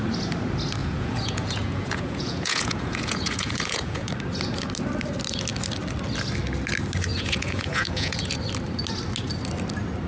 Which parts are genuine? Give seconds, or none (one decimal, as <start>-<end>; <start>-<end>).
0.0-0.8; 4.1-7.1; 8.3-10.1